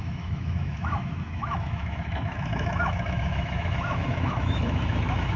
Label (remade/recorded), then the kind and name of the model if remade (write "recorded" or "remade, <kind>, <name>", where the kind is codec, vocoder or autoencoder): remade, autoencoder, DAC-VAE